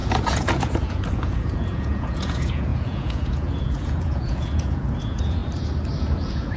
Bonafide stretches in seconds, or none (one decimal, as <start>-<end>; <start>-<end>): 5.4-6.0